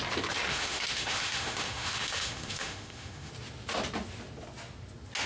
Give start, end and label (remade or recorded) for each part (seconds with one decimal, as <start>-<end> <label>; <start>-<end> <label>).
0.0-0.5 recorded; 0.5-3.3 remade; 3.3-5.3 recorded